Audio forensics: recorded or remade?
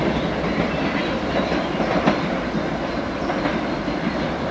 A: recorded